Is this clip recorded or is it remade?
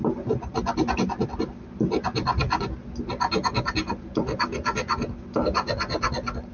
recorded